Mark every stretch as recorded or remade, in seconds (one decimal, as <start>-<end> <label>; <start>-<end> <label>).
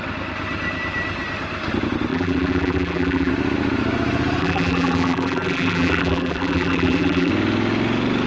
0.0-2.1 recorded; 2.1-3.3 remade; 3.3-4.4 recorded; 4.4-7.3 remade; 7.3-8.3 recorded